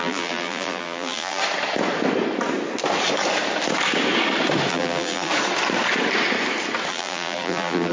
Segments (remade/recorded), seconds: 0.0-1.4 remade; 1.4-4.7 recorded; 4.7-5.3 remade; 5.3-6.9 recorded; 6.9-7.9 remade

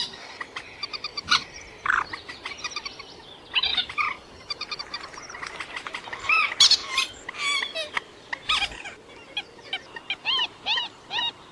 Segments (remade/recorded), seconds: 0.0-1.1 recorded; 1.1-2.3 remade; 2.3-3.7 recorded; 3.7-4.8 remade; 4.8-11.5 recorded

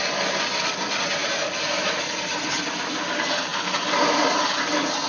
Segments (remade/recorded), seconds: 0.0-1.2 recorded; 1.2-2.6 remade; 2.6-3.5 recorded; 3.5-4.5 remade; 4.5-5.1 recorded